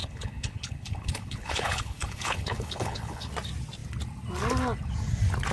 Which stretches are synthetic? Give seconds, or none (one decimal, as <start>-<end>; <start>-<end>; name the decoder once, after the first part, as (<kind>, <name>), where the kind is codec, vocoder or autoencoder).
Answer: 0.0-3.3 (codec, HILCodec)